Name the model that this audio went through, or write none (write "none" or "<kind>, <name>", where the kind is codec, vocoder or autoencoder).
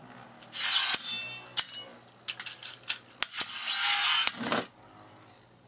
none